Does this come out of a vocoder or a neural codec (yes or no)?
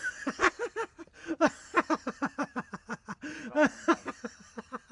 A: no